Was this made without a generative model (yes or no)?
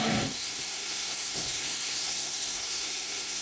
no